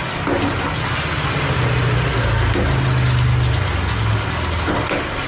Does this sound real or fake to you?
real